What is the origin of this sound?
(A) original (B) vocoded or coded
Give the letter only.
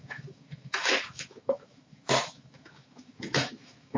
B